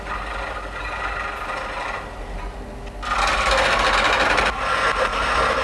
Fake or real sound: real